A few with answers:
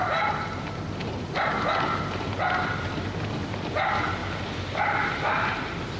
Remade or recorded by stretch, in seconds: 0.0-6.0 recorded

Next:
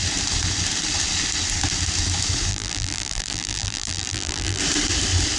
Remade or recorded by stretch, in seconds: 0.0-2.5 recorded; 2.5-4.6 remade; 4.6-5.4 recorded